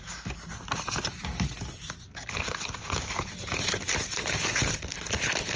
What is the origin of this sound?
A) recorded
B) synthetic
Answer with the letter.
A